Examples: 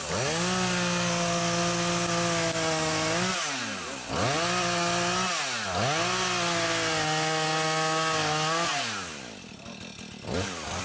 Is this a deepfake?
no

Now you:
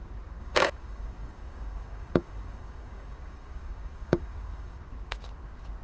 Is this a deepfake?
yes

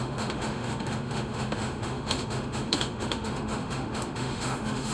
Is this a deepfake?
yes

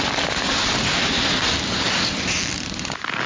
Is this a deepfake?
no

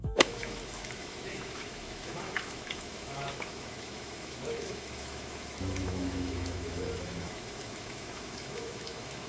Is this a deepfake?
yes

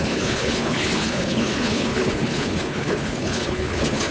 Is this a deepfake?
yes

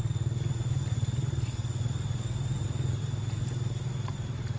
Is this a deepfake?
no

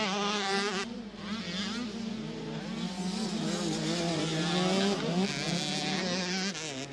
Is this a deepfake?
no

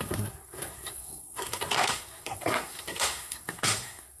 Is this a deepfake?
yes